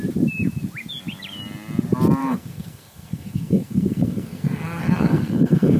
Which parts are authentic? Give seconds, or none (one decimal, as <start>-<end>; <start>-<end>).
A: 0.0-2.2